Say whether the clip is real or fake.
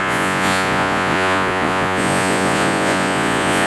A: fake